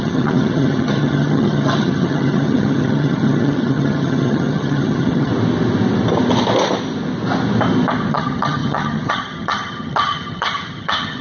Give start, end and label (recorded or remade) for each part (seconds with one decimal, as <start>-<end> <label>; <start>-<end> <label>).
0.0-5.3 remade; 5.3-8.1 recorded; 8.1-11.2 remade